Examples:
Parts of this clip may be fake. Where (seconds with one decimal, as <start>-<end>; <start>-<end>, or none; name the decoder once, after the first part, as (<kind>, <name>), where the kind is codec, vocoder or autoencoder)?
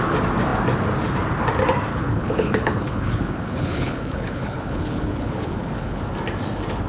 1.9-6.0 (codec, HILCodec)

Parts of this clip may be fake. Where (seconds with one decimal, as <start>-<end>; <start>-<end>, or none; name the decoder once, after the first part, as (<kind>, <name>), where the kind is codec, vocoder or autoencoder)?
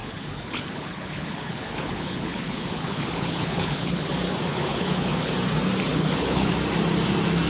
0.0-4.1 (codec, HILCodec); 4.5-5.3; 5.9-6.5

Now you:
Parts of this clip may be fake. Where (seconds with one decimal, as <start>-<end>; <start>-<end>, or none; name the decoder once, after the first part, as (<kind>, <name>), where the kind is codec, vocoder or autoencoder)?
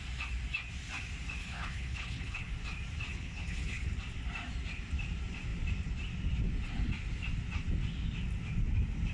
1.4-2.5 (codec, HILCodec); 3.1-3.9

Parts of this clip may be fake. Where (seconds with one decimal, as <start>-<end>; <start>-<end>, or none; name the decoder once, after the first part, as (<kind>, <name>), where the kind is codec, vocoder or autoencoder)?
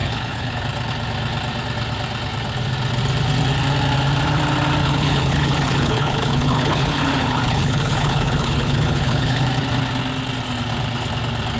0.0-0.6 (codec, HILCodec); 4.8-9.5